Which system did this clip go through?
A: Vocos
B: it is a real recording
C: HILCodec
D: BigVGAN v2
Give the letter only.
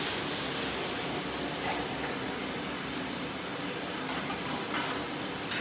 B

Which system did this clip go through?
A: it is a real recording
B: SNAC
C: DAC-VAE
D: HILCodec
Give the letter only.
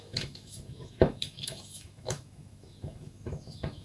C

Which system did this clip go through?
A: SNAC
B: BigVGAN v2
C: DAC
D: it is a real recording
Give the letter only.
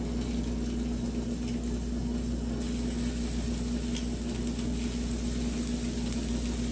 D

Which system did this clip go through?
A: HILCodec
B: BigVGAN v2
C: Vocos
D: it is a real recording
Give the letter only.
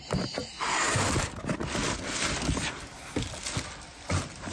D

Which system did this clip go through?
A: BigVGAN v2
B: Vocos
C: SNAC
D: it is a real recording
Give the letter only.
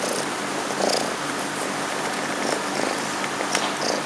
D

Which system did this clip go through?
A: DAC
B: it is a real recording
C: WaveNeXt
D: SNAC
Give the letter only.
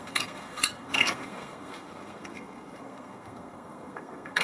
D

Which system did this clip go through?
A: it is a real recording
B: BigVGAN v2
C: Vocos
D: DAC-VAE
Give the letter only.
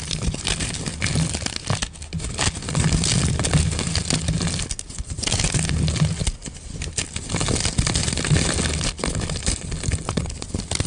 A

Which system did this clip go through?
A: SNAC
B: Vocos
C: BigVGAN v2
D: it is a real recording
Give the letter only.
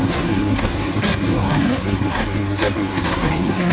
A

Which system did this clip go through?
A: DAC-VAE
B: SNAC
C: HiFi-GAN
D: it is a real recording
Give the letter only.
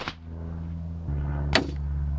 D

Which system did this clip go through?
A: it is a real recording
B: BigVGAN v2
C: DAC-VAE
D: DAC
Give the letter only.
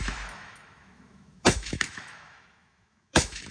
C